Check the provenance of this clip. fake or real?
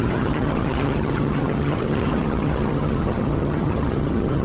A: fake